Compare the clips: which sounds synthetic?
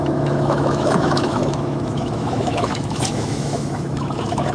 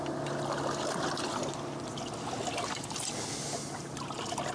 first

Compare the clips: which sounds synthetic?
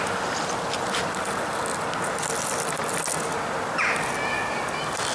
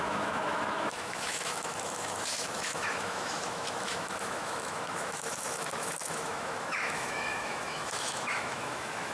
second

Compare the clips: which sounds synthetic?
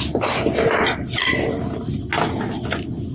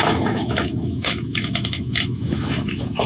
second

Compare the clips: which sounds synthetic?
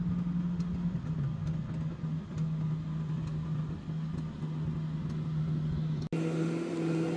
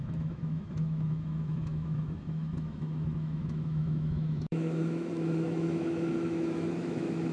second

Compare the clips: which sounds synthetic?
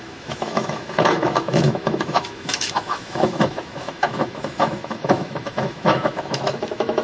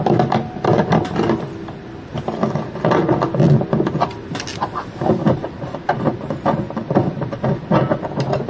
first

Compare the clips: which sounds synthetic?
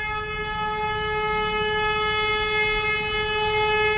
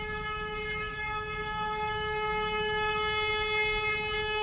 second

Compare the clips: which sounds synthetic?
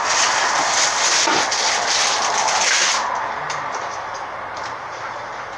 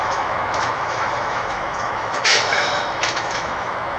second